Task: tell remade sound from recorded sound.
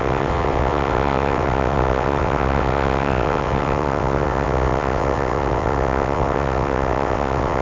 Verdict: remade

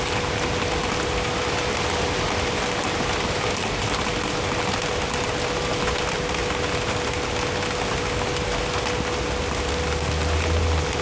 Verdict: recorded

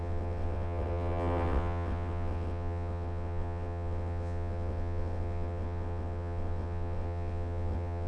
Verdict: remade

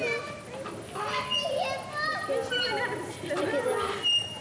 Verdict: recorded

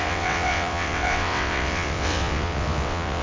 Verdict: remade